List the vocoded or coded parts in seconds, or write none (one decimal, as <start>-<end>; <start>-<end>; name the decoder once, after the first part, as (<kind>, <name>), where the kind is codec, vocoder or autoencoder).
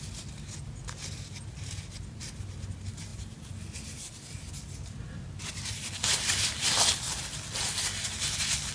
none